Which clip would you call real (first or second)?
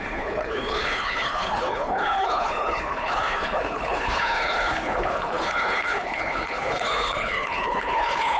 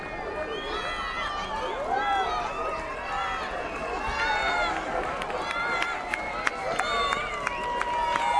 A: second